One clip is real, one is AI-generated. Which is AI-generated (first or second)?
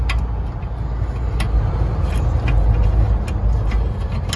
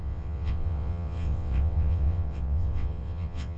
second